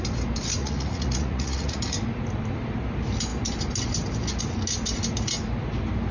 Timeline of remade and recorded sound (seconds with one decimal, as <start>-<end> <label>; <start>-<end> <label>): 0.0-0.6 recorded; 0.6-1.8 remade; 1.8-6.1 recorded